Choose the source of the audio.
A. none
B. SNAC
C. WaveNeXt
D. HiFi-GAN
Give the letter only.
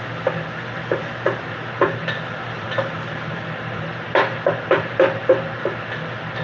A